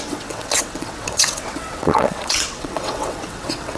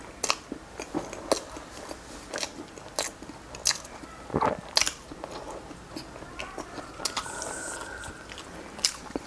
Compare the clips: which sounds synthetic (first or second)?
first